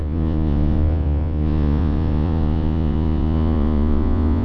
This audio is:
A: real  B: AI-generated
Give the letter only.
B